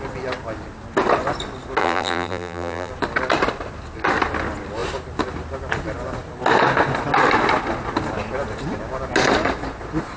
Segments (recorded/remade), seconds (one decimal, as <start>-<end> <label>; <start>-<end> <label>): 0.0-1.8 recorded; 1.8-2.9 remade; 2.9-10.2 recorded